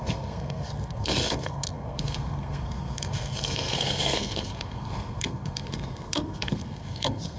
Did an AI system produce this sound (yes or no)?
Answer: yes